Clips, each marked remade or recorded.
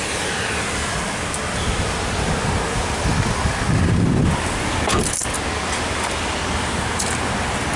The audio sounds recorded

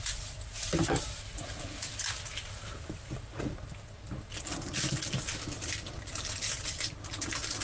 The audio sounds recorded